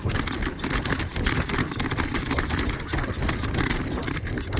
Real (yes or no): yes